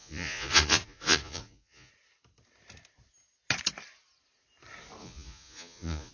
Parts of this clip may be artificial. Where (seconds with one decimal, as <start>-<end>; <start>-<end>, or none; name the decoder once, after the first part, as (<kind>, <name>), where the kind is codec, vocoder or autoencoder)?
0.0-1.9 (vocoder, Vocos); 5.0-6.1